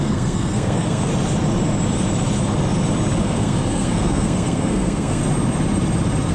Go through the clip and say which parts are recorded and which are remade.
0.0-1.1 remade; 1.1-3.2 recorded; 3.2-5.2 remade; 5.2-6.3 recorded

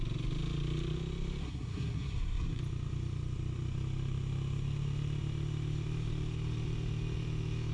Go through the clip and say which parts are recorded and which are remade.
0.0-1.4 recorded; 1.4-2.6 remade; 2.6-7.7 recorded

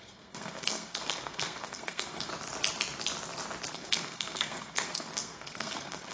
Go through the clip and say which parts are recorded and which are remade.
0.0-2.3 remade; 2.3-3.7 recorded; 3.7-6.1 remade

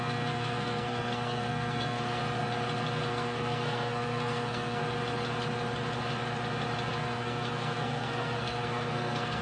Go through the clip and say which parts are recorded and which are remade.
0.0-2.2 remade; 2.2-3.1 recorded; 3.1-4.8 remade; 4.8-6.9 recorded; 6.9-9.4 remade

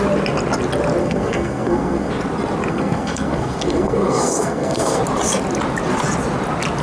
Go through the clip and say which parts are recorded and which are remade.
0.0-1.0 recorded; 1.0-2.1 remade; 2.1-2.7 recorded; 2.7-5.0 remade; 5.0-6.8 recorded